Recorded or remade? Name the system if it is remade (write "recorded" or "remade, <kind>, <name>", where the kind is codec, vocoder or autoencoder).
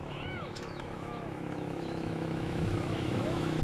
remade, autoencoder, DAC-VAE